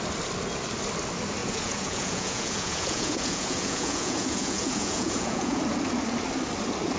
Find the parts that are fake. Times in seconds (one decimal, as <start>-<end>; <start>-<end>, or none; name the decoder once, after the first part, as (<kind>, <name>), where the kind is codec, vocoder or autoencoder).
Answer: 1.4-5.6 (vocoder, Vocos)